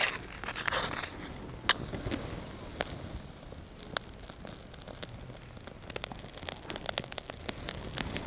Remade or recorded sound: recorded